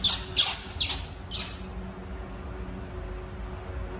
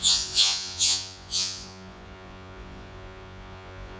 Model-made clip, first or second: second